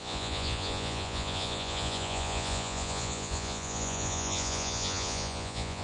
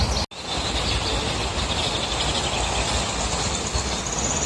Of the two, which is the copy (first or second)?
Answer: first